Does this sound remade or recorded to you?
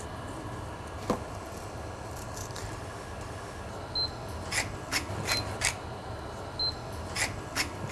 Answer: recorded